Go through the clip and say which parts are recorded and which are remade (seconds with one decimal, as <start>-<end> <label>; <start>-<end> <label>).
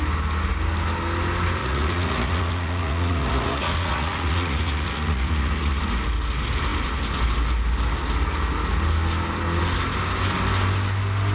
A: 0.0-1.6 recorded; 1.6-5.8 remade; 5.8-11.3 recorded